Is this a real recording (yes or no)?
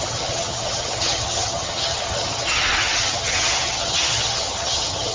no